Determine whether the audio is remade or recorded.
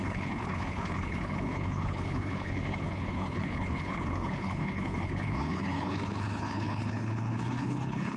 remade